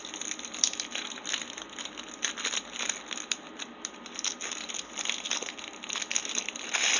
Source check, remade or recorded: recorded